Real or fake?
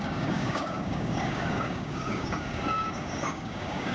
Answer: fake